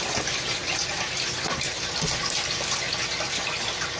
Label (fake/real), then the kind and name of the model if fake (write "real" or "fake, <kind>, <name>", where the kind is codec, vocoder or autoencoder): real